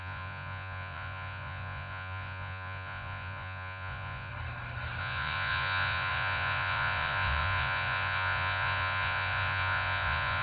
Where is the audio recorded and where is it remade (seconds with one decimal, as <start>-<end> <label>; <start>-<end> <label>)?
0.0-4.3 remade; 4.3-5.0 recorded; 5.0-10.4 remade